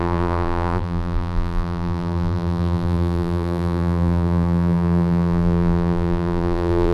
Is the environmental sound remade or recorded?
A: remade